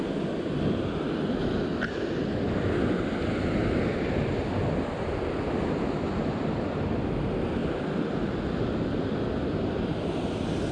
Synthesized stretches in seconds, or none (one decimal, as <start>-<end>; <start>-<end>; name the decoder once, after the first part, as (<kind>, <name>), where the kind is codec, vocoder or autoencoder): none